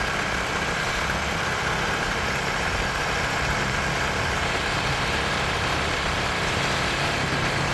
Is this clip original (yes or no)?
no